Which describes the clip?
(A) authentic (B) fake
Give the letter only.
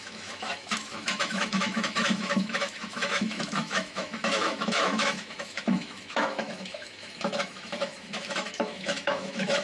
B